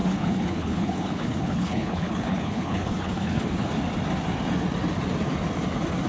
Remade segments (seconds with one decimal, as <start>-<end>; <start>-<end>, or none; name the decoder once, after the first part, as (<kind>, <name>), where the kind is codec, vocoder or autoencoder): 0.0-3.7 (codec, HILCodec)

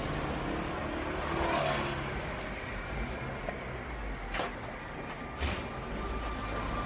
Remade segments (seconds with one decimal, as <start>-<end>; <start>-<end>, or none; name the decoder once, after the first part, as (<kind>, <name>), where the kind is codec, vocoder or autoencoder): none

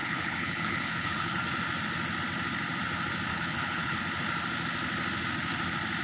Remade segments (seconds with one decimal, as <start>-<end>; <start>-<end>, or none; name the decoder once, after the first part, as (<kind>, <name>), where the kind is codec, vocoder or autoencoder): 0.0-1.4 (codec, HILCodec); 3.3-4.0

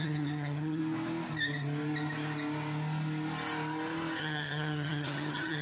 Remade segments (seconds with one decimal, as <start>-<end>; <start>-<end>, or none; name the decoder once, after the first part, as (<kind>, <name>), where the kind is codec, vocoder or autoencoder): 0.0-0.8 (vocoder, HiFi-GAN); 4.2-5.6

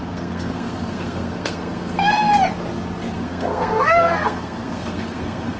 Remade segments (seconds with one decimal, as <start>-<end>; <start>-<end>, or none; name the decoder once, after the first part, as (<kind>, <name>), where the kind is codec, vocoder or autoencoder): 0.0-2.3 (codec, SNAC); 3.1-5.6

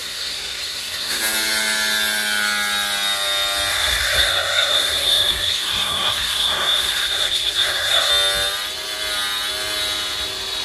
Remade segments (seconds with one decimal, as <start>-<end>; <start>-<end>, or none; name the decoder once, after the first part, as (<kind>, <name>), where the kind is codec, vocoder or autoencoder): 0.0-1.2 (codec, SNAC); 3.7-8.1

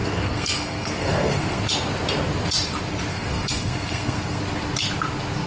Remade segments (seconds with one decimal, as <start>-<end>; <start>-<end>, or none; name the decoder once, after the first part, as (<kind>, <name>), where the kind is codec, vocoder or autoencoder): 0.0-1.6 (codec, SNAC); 3.1-4.4